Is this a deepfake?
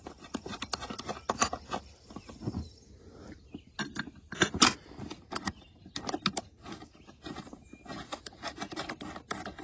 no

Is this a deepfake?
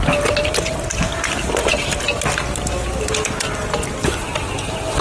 no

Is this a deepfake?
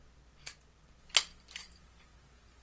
no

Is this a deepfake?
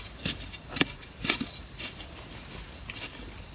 no